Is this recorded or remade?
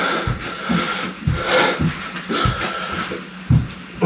recorded